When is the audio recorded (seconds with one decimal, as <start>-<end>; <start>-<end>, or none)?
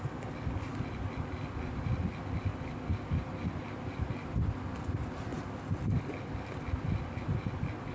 0.0-2.5; 4.5-5.3; 6.1-7.9